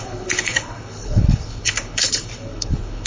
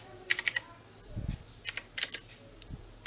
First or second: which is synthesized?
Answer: first